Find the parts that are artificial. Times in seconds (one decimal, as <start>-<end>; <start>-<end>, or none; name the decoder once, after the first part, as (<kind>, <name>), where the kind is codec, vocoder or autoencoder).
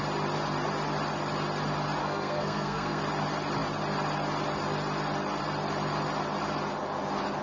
2.0-3.0 (codec, SNAC)